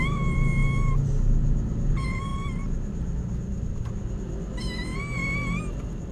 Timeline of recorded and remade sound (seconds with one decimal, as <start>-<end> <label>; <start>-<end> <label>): 0.0-6.1 recorded